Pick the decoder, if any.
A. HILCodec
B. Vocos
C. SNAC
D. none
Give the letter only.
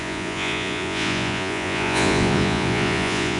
B